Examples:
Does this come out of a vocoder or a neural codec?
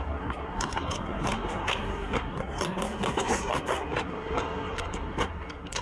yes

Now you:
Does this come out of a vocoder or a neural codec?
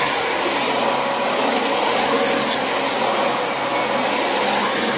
no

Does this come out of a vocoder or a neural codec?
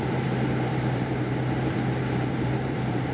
yes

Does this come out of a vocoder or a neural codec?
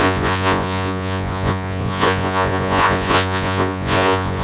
yes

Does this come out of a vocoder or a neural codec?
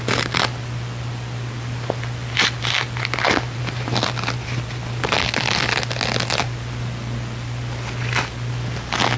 no